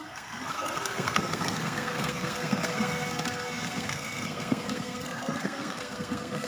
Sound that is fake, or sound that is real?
fake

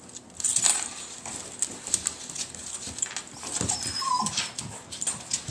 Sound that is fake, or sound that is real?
real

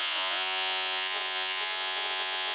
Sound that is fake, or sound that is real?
fake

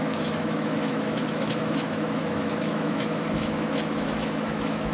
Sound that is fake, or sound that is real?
fake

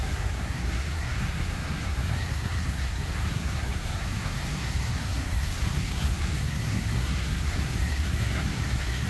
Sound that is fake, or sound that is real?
fake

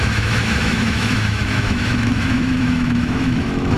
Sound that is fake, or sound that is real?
fake